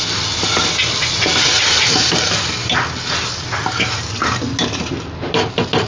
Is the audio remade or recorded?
recorded